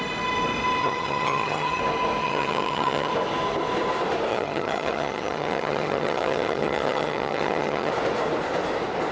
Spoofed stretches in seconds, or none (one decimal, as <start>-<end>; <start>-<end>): 0.8-1.8; 2.2-3.1; 4.3-7.9